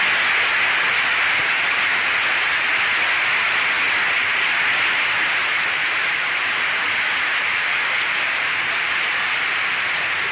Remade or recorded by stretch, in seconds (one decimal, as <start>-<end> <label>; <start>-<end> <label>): 0.0-1.4 recorded; 1.4-2.7 remade; 2.7-5.4 recorded; 5.4-10.3 remade

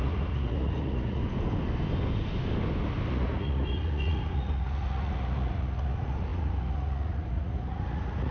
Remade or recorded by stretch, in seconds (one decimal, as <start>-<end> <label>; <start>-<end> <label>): 0.0-1.2 remade; 1.2-3.1 recorded; 3.1-8.3 remade

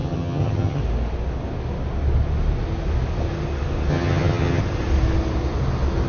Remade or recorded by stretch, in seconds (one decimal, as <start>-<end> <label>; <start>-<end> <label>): 0.0-0.8 remade; 0.8-3.9 recorded; 3.9-4.6 remade; 4.6-6.1 recorded

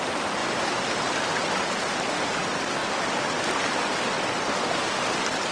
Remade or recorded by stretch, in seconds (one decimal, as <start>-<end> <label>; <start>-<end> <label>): 0.0-5.5 recorded